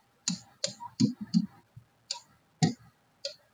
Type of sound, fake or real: real